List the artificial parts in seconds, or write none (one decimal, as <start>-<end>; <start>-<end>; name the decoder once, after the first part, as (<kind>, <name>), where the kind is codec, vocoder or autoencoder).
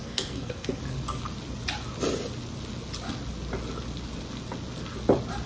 0.0-0.8 (codec, SNAC)